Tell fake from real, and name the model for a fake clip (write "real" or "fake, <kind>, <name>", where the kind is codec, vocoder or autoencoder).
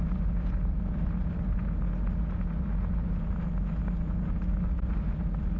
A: real